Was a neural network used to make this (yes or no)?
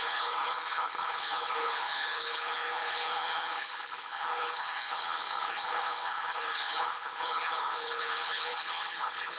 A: yes